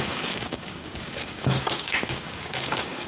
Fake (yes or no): yes